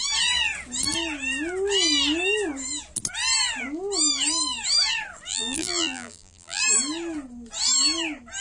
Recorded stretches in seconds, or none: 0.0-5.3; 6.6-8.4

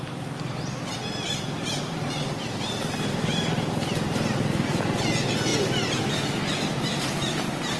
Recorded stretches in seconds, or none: 0.0-5.5; 6.0-7.8

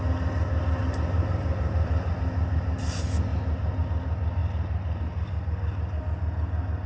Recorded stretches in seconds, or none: 0.0-0.8; 2.1-6.9